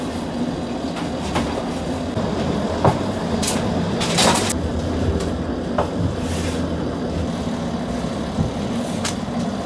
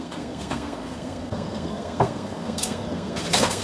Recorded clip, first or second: first